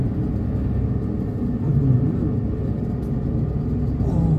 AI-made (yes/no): no